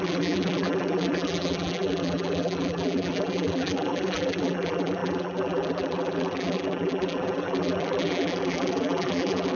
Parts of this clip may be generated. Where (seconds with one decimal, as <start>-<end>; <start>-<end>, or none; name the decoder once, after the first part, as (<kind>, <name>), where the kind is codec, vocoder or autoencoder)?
0.0-9.5 (vocoder, BigVGAN v2)